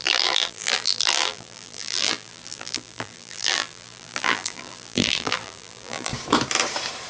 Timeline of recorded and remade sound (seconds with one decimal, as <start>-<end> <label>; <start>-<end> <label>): 0.0-6.1 remade; 6.1-7.1 recorded

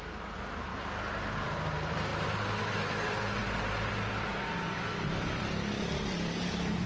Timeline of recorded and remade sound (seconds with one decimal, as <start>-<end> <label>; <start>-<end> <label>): 0.0-0.7 remade; 0.7-1.2 recorded; 1.2-2.1 remade; 2.1-2.6 recorded; 2.6-6.9 remade

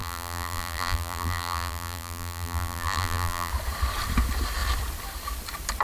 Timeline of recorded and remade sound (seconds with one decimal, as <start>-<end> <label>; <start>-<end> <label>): 0.0-3.5 remade; 3.5-5.8 recorded